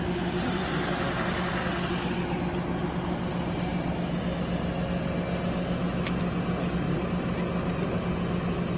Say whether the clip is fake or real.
real